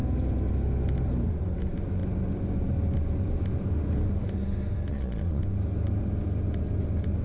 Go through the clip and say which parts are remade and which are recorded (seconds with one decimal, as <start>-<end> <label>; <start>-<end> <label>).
0.0-4.9 recorded; 4.9-5.4 remade; 5.4-7.2 recorded